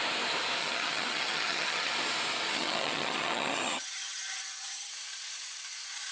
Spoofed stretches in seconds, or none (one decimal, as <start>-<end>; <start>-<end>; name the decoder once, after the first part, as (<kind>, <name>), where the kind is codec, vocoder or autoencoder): 0.6-1.9 (vocoder, HiFi-GAN); 2.5-4.9